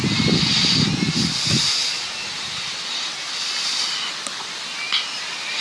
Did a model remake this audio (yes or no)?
no